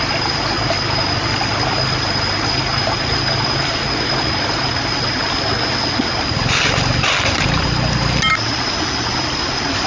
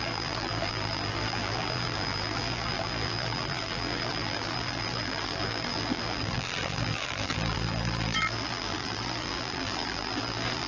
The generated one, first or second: second